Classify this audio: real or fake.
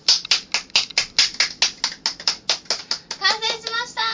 real